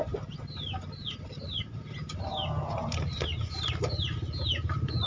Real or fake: real